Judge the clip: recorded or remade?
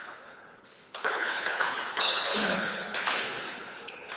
remade